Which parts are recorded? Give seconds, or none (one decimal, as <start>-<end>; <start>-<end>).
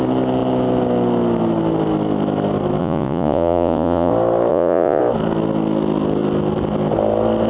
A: 0.0-2.8; 4.1-4.5; 5.0-7.5